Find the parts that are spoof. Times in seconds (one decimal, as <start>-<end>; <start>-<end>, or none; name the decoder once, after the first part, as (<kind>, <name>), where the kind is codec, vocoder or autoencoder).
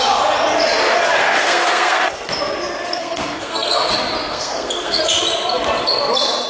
1.2-2.0 (codec, SNAC); 3.0-3.9; 4.3-5.0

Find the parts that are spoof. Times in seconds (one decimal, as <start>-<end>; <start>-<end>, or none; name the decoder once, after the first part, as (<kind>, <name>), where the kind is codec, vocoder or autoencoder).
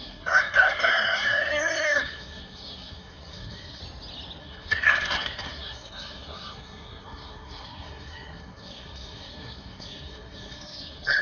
0.0-3.8 (codec, SNAC); 4.4-11.2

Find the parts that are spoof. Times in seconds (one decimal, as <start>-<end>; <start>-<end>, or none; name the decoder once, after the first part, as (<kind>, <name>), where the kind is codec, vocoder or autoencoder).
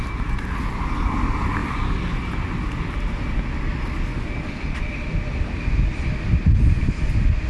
none